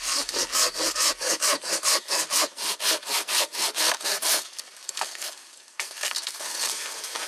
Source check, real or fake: fake